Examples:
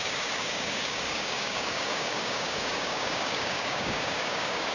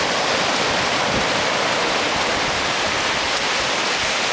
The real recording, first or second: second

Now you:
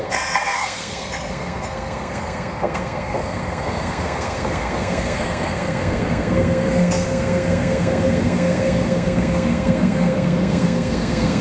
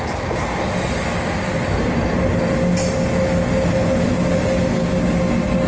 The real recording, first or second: second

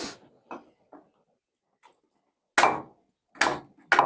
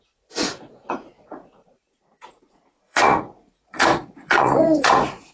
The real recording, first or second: first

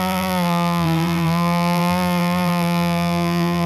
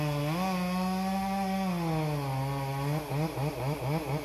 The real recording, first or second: second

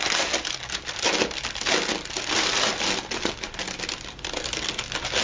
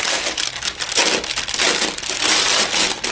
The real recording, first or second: second